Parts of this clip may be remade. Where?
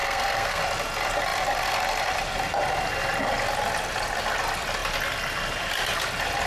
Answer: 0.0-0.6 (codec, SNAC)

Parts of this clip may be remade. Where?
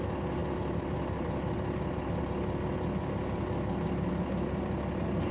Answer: none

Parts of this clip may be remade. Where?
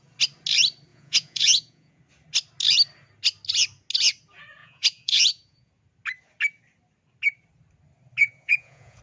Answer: 0.9-2.0 (vocoder, Vocos); 4.6-5.7; 8.2-9.0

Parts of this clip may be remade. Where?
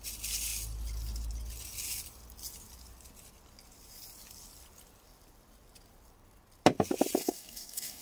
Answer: 7.2-8.0 (codec, DAC)